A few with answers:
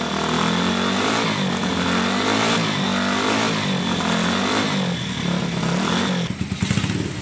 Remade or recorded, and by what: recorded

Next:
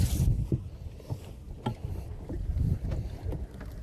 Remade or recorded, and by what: recorded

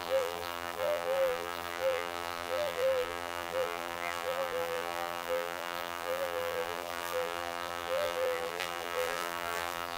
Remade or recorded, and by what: remade, vocoder, BigVGAN v2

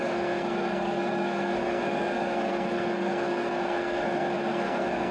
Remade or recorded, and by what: remade, codec, SNAC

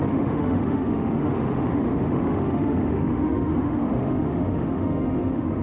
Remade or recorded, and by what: remade, autoencoder, DAC-VAE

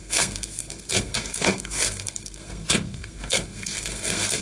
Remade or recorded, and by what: remade, codec, SNAC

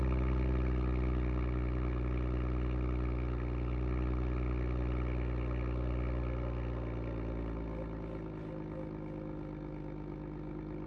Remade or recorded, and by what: recorded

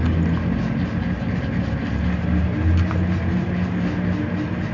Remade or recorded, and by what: recorded